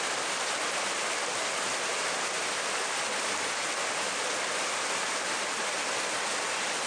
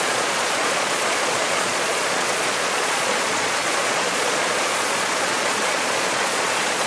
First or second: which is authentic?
first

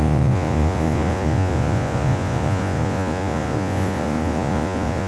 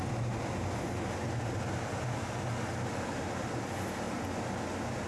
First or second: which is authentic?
second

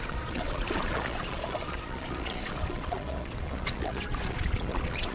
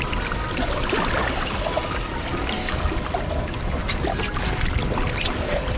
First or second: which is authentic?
second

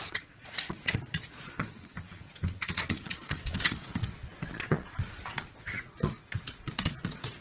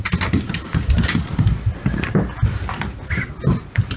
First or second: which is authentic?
second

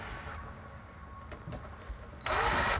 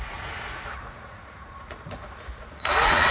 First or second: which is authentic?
first